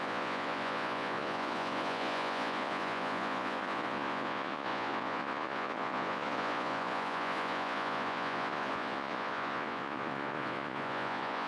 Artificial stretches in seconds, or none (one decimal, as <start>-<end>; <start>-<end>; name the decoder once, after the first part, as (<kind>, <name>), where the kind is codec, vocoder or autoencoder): 0.0-11.5 (vocoder, Vocos)